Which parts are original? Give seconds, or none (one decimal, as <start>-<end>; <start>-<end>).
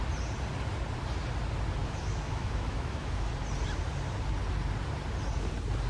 0.0-1.8; 3.3-5.9